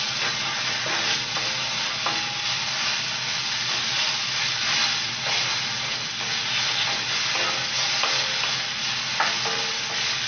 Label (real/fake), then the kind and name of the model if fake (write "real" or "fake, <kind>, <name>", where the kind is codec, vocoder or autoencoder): real